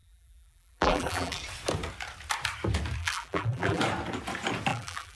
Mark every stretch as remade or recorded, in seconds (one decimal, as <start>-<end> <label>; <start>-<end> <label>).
0.0-1.4 remade; 1.4-3.0 recorded; 3.0-3.8 remade; 3.8-4.7 recorded; 4.7-5.2 remade